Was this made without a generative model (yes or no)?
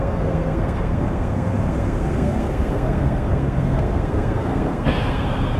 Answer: no